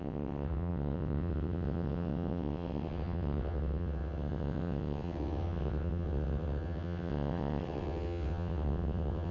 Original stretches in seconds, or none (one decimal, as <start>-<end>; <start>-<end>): none